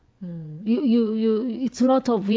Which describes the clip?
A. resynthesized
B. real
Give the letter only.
A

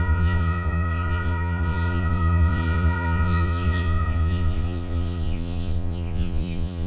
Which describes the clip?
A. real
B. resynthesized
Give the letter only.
B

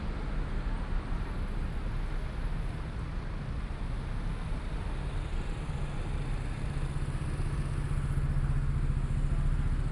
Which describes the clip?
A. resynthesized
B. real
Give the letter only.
B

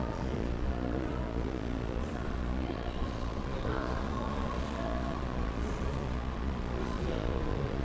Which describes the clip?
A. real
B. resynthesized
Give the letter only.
B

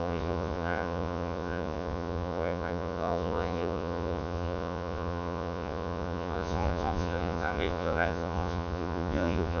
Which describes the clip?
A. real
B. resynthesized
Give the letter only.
B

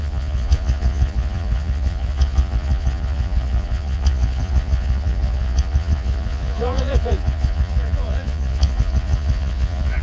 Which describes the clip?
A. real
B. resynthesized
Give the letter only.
B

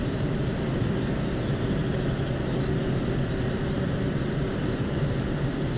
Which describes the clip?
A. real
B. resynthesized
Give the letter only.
A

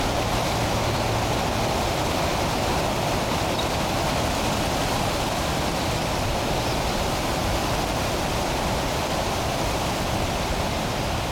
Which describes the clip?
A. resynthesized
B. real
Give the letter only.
B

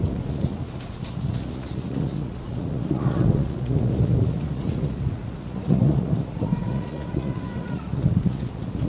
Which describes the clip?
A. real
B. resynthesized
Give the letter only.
B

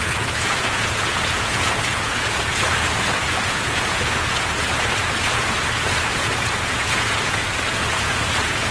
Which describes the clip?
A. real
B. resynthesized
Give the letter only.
B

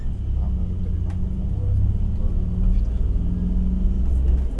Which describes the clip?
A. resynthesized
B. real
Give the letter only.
B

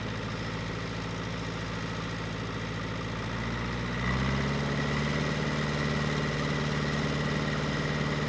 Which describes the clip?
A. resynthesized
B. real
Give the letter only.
B